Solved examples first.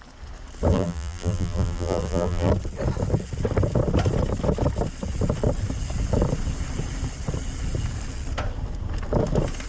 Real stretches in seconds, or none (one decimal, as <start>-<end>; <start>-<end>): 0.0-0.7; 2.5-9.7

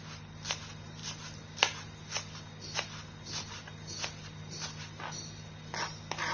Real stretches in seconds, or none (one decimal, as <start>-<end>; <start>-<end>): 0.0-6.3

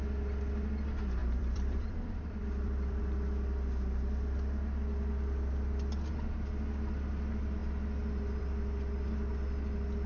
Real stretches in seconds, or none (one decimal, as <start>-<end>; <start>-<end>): 0.0-1.2; 3.0-10.1

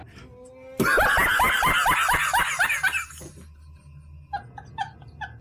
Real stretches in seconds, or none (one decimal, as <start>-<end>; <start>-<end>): 0.0-2.5; 3.1-5.4